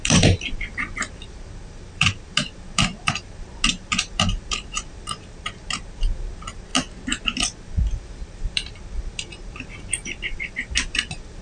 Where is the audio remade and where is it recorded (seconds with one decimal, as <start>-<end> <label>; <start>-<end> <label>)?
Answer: 0.0-6.7 remade; 6.7-7.6 recorded; 7.6-11.4 remade